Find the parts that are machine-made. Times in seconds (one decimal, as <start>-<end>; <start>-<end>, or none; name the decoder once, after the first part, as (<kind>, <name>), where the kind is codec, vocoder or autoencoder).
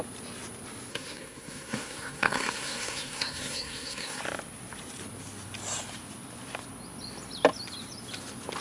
0.9-4.2 (codec, SNAC)